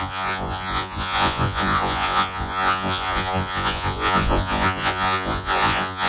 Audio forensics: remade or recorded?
remade